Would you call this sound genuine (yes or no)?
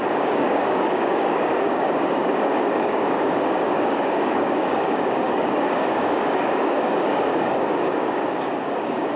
no